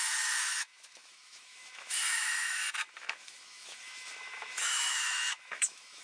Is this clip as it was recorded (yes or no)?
no